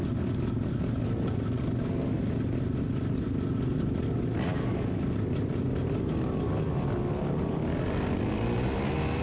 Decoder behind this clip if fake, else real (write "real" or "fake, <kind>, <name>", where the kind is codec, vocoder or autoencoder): real